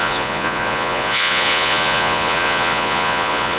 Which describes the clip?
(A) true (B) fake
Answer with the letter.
B